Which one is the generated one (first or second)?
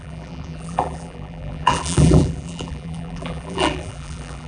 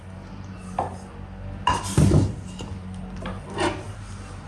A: first